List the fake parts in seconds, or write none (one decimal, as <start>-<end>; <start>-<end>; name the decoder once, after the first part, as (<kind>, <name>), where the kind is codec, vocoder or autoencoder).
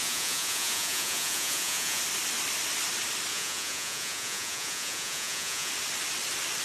0.0-2.0 (vocoder, Vocos); 3.3-5.7